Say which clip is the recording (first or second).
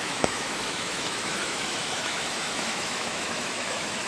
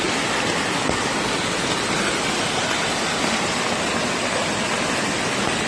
second